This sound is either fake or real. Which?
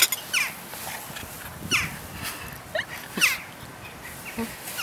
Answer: real